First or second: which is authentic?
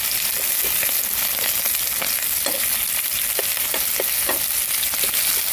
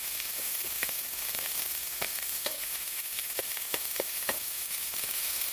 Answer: first